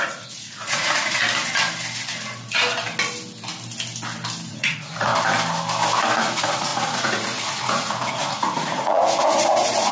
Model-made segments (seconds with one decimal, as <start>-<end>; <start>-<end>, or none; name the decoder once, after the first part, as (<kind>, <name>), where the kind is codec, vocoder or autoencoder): 0.0-1.2 (vocoder, Vocos); 4.5-5.1; 6.2-9.9